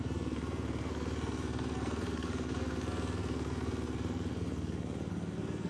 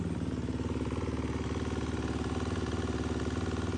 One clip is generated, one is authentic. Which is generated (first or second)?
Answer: first